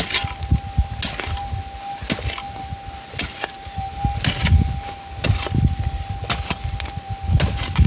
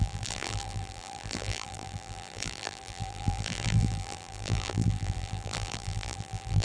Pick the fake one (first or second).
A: second